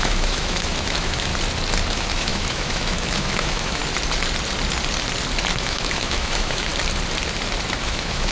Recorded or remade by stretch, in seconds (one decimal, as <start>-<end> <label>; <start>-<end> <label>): 0.0-1.3 remade; 1.3-1.9 recorded; 1.9-3.8 remade; 3.8-5.6 recorded; 5.6-6.7 remade; 6.7-7.8 recorded; 7.8-8.3 remade

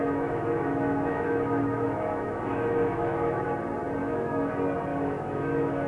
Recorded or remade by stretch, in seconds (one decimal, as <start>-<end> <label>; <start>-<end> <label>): 0.0-3.5 remade; 3.5-4.0 recorded; 4.0-4.5 remade; 4.5-4.9 recorded; 4.9-5.9 remade

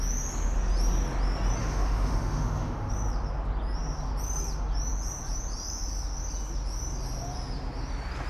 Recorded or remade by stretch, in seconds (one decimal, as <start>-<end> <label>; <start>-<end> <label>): 0.0-1.6 recorded; 1.6-2.9 remade; 2.9-8.3 recorded

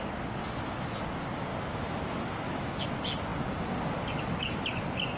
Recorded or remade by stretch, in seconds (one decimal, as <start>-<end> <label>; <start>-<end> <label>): 0.0-0.4 recorded; 0.4-1.0 remade; 1.0-1.5 recorded; 1.5-2.8 remade; 2.8-5.2 recorded

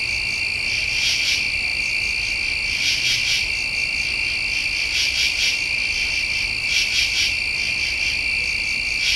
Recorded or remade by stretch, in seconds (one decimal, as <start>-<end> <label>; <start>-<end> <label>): 0.0-9.2 recorded

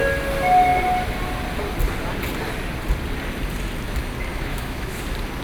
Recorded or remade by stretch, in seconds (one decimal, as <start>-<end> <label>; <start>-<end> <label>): 0.0-4.3 recorded; 4.3-5.0 remade; 5.0-5.4 recorded

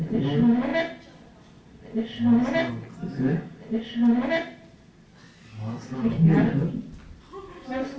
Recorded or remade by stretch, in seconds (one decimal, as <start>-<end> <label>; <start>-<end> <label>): 0.0-8.0 recorded